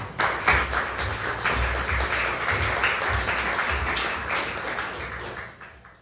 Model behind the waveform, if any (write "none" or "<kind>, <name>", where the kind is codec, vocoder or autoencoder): none